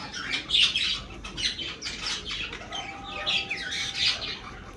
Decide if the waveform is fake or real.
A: real